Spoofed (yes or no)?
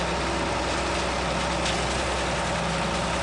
no